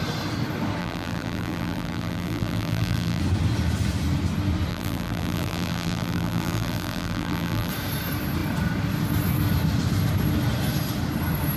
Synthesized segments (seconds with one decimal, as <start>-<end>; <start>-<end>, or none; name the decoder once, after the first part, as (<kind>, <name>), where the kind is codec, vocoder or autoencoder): 0.8-3.2 (vocoder, BigVGAN v2); 4.7-7.7